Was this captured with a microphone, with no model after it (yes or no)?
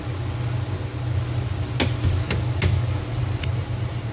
yes